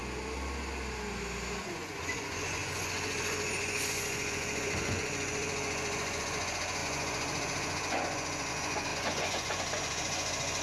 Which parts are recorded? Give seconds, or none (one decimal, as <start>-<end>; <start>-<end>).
0.0-1.6